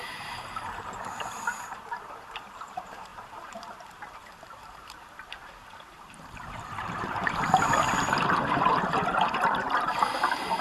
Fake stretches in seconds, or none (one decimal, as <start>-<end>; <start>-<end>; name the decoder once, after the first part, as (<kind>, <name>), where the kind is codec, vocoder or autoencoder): 0.0-10.6 (vocoder, BigVGAN v2)